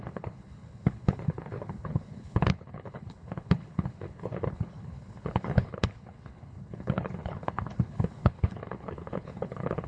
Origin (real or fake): fake